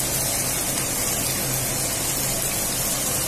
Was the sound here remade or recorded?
recorded